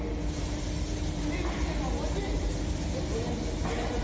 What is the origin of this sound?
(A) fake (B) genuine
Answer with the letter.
B